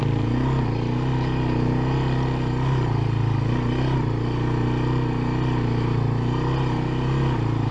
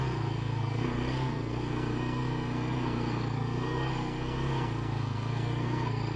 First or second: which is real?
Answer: first